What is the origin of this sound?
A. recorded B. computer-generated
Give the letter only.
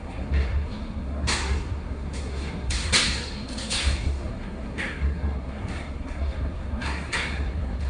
B